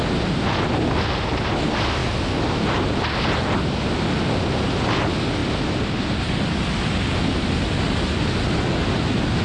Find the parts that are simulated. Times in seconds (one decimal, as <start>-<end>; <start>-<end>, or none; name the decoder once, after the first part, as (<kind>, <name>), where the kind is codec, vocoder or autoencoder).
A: none